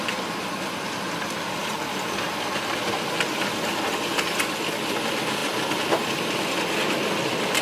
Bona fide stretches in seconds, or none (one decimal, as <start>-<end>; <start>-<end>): 0.0-7.6